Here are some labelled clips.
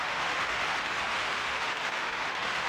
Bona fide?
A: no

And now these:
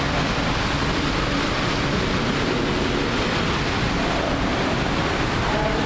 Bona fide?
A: no